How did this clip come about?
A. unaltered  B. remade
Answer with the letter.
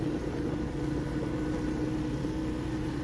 A